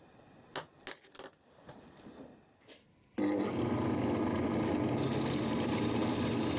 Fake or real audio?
real